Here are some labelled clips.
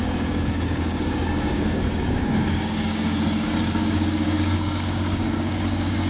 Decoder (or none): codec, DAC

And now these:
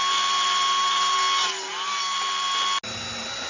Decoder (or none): none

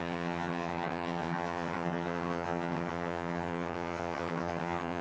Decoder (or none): vocoder, HiFi-GAN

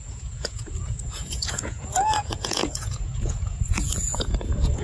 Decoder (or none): vocoder, Vocos